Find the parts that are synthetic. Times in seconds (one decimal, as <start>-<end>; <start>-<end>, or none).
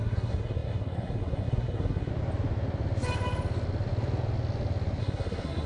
0.0-2.1; 5.0-5.7